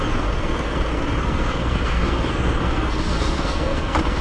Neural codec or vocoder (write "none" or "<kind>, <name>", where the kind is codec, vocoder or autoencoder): codec, SNAC